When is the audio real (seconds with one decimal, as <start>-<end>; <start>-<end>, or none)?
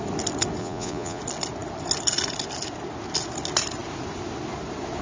0.0-0.6; 1.2-5.0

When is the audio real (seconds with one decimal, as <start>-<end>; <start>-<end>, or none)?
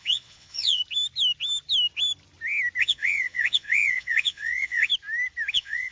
0.8-2.8; 4.9-5.5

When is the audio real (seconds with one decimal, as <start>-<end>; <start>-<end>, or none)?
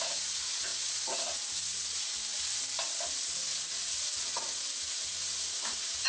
2.3-3.4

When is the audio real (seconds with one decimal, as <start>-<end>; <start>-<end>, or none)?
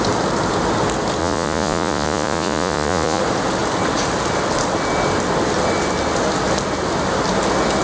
0.0-1.2; 3.2-7.8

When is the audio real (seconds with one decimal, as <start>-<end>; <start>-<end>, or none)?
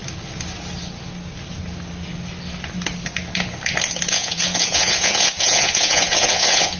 0.0-4.1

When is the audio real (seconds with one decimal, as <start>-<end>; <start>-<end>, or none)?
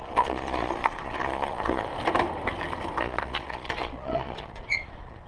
1.9-3.0